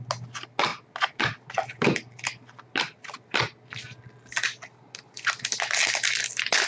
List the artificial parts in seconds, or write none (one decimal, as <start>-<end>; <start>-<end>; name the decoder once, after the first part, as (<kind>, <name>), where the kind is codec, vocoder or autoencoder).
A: none